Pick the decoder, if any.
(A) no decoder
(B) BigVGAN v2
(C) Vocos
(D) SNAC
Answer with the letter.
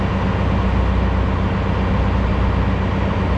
A